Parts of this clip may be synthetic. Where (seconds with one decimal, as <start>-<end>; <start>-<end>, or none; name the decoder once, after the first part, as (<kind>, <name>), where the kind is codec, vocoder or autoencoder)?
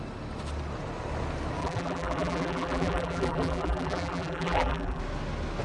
1.6-5.0 (vocoder, BigVGAN v2)